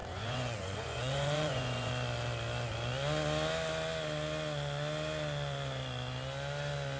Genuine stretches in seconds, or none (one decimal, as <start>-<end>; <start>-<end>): 1.9-7.0